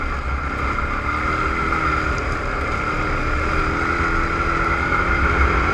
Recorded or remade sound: recorded